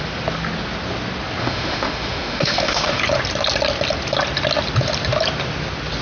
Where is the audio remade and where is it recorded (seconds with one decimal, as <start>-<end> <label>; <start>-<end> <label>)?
0.0-1.4 recorded; 1.4-3.0 remade; 3.0-6.0 recorded